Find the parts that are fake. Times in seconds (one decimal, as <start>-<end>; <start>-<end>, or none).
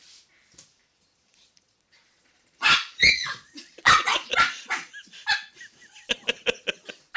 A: 0.8-4.9